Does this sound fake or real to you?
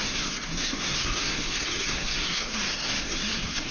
fake